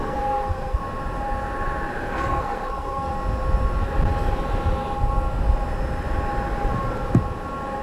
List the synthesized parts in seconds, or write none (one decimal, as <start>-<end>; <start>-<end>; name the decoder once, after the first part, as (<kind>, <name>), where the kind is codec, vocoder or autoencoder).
0.0-0.8 (codec, SNAC); 2.1-3.1